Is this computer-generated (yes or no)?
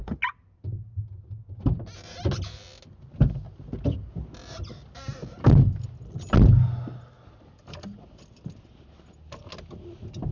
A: no